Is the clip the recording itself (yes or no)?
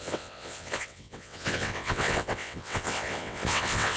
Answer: no